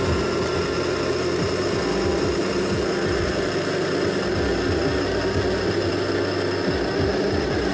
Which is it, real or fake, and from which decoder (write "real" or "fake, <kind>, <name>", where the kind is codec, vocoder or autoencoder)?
real